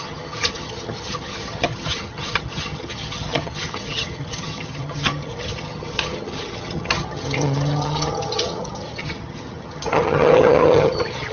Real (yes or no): no